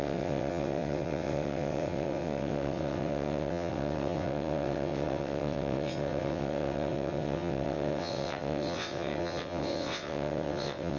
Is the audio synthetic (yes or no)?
yes